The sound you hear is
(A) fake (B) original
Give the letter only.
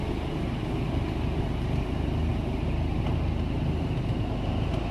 B